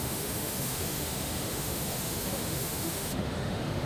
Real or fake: fake